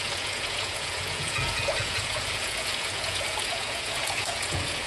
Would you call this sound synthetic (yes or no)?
yes